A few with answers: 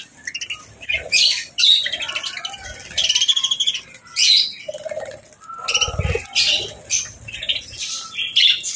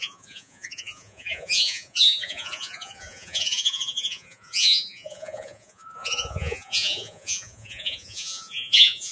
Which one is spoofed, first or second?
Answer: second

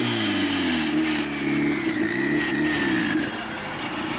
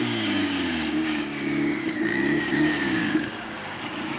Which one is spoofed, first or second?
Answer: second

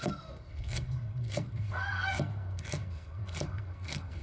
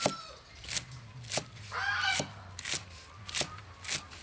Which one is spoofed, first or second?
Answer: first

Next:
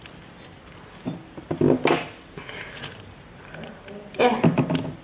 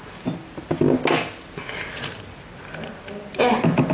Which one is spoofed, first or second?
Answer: first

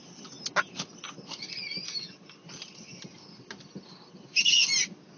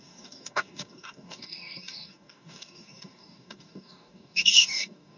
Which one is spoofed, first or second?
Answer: second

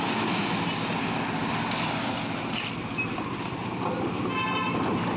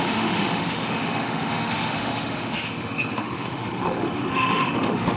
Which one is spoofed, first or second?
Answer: second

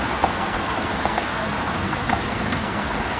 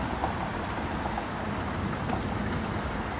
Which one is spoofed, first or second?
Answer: first